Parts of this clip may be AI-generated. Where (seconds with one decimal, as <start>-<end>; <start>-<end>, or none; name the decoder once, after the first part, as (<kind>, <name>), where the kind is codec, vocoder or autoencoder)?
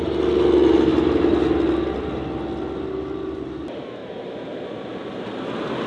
4.0-5.3 (vocoder, BigVGAN v2)